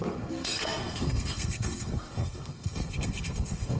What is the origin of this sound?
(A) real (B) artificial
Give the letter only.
B